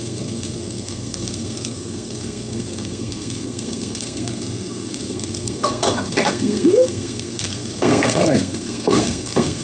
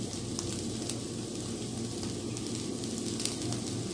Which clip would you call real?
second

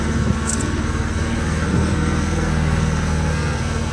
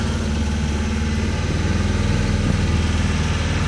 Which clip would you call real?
second